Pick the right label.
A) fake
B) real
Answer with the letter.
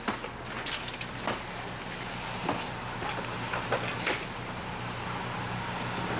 B